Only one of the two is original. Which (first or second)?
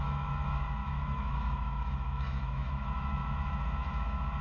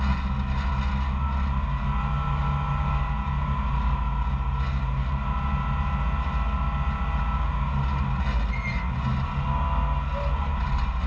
second